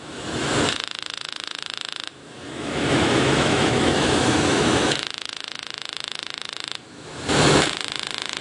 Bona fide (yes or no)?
no